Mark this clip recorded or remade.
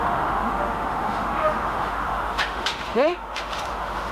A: remade